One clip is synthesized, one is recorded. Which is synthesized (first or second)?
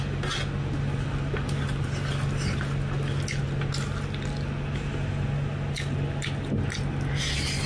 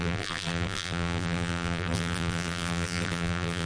second